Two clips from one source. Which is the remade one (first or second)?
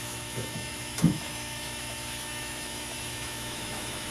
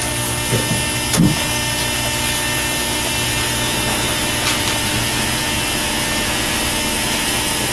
first